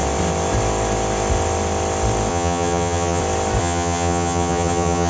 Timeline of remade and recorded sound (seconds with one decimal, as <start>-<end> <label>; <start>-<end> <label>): 0.0-2.3 recorded; 2.3-3.2 remade; 3.2-3.6 recorded; 3.6-5.1 remade